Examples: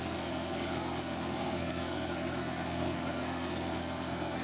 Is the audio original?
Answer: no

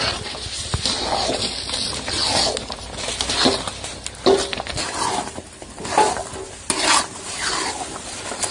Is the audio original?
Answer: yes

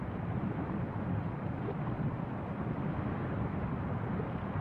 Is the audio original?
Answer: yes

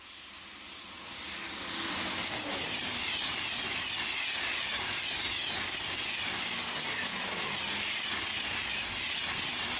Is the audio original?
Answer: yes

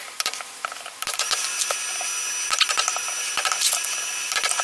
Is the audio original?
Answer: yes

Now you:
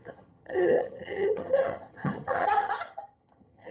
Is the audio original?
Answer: no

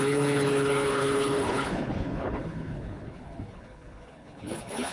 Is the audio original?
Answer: no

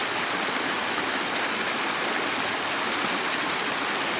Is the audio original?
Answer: yes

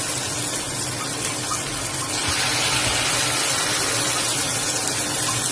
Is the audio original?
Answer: yes